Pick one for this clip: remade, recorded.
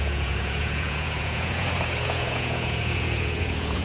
remade